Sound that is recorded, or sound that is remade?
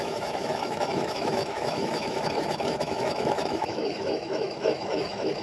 remade